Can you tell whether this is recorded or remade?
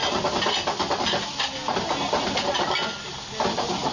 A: recorded